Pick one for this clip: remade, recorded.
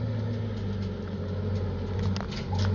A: recorded